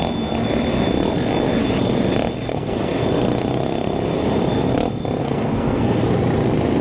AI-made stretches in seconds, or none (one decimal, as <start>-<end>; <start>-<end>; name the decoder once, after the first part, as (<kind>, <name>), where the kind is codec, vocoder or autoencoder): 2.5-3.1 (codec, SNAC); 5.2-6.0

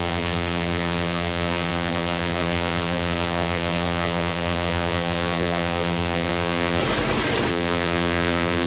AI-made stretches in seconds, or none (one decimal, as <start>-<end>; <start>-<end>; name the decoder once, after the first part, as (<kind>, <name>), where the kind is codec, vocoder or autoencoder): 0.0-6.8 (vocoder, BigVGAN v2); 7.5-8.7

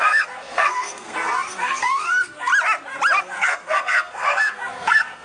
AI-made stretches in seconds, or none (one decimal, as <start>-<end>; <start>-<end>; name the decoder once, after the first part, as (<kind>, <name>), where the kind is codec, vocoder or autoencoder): 0.0-2.5 (codec, SNAC); 3.2-5.2

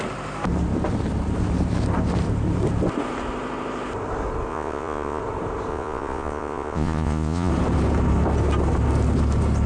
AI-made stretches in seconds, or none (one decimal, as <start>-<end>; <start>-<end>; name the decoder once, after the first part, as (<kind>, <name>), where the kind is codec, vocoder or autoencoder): 4.5-5.2 (vocoder, Vocos); 5.7-7.5

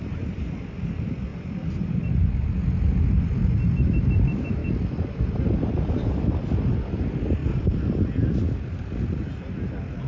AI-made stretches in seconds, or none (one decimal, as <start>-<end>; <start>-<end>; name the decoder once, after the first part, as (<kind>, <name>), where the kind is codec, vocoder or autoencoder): none